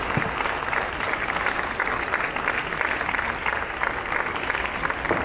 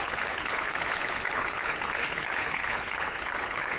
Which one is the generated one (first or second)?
second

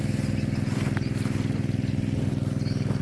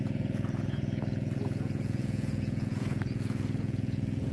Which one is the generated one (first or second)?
second